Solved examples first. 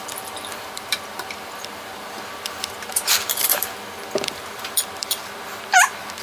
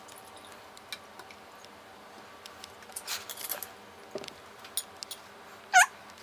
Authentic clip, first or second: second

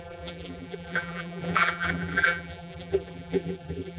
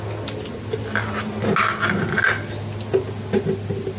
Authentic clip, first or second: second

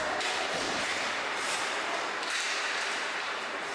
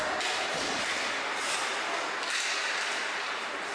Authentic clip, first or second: second